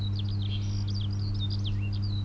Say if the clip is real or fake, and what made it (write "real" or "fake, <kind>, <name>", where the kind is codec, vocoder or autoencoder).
real